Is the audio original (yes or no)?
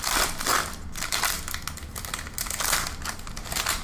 yes